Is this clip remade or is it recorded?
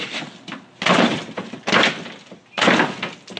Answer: recorded